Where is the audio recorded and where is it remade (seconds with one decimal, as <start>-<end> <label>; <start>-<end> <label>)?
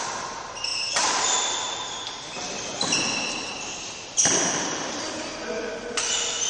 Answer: 0.0-6.5 recorded